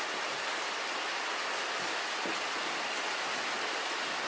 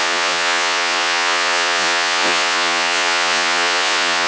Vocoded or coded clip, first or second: second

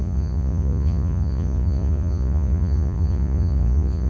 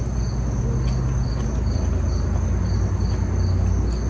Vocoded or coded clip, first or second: first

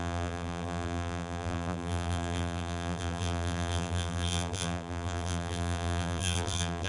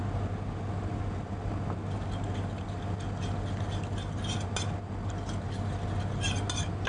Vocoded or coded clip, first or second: first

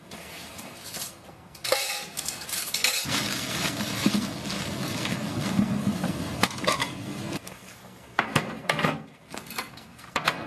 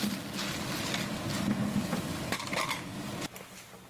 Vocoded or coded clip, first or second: first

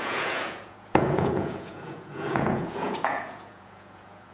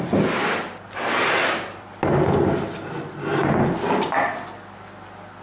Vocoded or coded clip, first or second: first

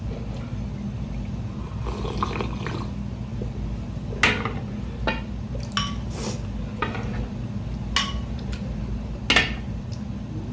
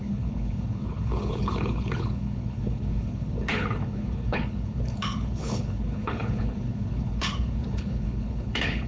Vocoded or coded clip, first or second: second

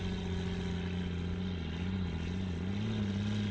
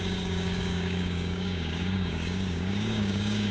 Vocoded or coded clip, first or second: second